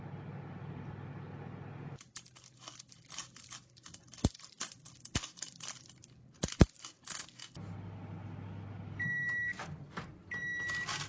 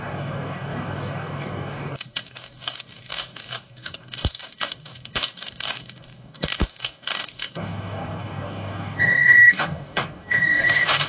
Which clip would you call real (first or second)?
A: first